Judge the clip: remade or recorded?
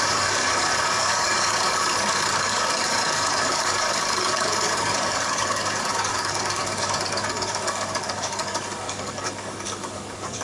remade